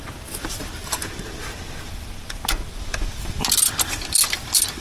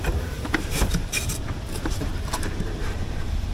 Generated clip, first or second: second